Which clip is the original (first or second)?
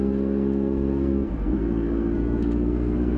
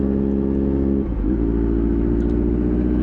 second